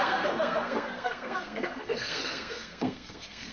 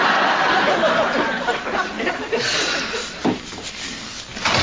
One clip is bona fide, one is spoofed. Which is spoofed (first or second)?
first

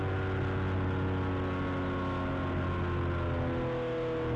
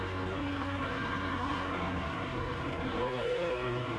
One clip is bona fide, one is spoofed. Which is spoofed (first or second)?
second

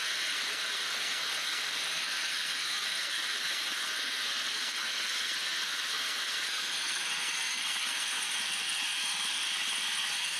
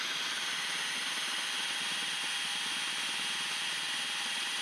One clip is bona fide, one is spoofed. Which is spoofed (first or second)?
first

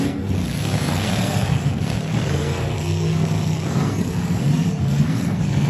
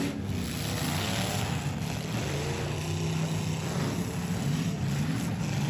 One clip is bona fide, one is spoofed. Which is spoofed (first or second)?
first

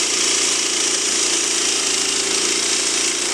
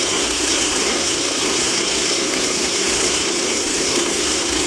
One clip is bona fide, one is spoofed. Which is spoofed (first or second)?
second